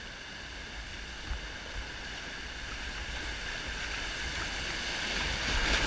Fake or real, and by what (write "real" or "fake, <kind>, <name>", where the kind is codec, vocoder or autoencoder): real